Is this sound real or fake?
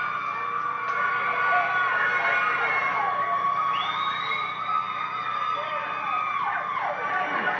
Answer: real